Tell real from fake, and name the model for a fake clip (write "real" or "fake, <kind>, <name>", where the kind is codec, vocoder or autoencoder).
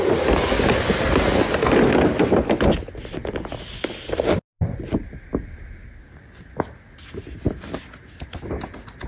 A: real